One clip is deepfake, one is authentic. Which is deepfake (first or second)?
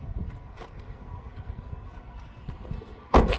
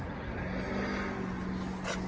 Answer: first